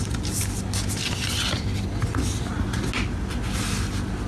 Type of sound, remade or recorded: recorded